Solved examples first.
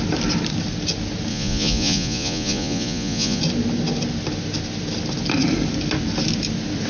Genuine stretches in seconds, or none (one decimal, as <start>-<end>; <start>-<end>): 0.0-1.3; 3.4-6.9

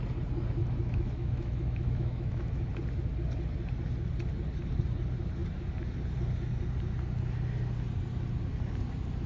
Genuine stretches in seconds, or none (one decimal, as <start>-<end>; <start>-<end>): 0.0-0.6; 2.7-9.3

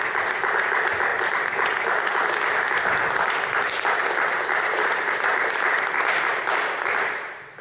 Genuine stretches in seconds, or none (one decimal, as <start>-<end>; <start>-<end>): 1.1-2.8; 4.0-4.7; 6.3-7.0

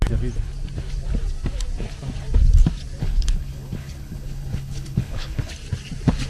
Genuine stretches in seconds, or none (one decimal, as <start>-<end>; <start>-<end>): 0.0-3.0; 5.5-6.3

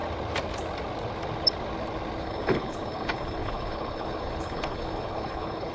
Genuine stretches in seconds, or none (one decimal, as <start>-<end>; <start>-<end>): 0.0-2.2